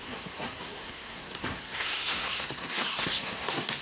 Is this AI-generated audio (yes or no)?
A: yes